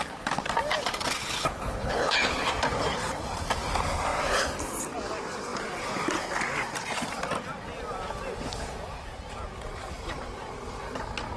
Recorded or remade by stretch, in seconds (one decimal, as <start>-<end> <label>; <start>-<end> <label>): 0.0-1.2 recorded; 1.2-2.5 remade; 2.5-11.4 recorded